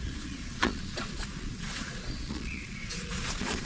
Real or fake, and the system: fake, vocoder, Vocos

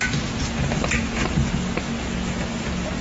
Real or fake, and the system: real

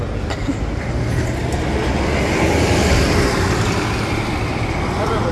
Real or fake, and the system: real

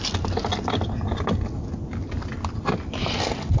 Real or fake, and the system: real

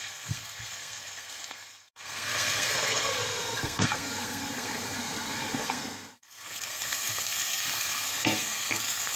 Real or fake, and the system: fake, codec, SNAC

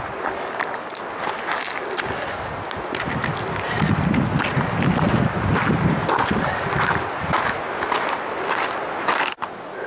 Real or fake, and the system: real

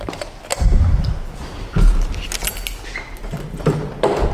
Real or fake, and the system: real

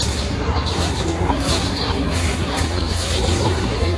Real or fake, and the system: fake, codec, SNAC